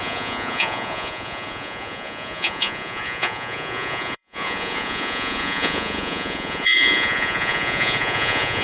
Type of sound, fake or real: fake